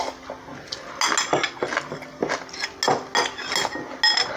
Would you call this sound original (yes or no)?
yes